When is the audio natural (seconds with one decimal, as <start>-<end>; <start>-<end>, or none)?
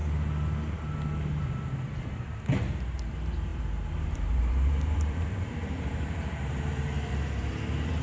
0.0-2.1